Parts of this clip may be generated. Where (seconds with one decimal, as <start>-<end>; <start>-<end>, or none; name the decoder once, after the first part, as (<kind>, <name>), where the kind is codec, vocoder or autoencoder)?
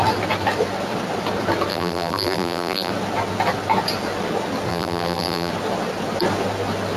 1.7-2.9 (vocoder, BigVGAN v2); 4.7-5.5